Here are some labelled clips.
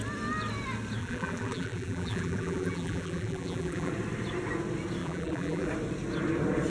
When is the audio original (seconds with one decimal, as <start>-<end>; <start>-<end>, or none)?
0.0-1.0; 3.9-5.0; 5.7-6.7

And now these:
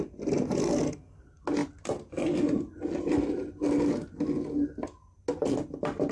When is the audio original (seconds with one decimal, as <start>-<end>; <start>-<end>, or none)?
0.0-6.1

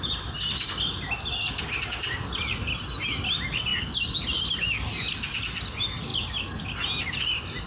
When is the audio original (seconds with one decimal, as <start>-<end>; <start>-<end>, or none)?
0.0-7.7

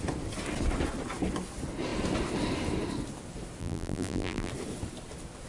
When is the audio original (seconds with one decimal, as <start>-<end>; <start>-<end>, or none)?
0.0-3.6; 4.5-5.5

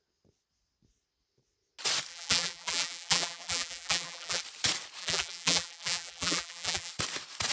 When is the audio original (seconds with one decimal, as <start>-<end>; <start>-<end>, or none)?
0.0-2.1; 4.4-5.0; 6.9-7.5

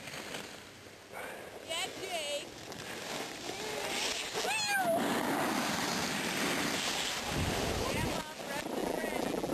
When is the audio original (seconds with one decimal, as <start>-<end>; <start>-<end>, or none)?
0.0-8.8

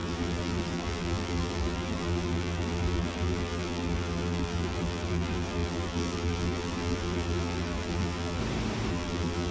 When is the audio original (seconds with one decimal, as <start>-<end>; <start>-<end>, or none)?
8.4-8.9

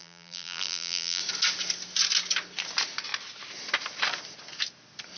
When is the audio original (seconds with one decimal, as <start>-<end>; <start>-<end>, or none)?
1.2-5.2